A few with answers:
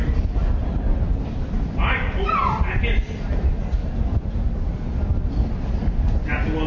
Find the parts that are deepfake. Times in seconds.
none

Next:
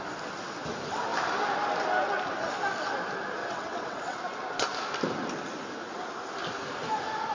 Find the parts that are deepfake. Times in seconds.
3.4-4.2 (vocoder, WaveNeXt)

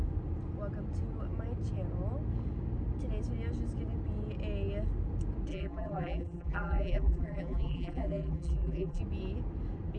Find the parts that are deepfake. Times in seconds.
5.5-9.0 (vocoder, BigVGAN v2)

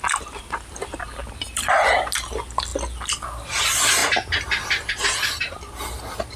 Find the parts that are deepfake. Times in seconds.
none